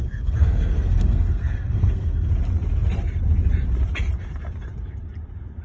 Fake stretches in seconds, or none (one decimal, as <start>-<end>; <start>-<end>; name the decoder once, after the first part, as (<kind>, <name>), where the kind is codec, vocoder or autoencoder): 0.0-2.3 (codec, SNAC)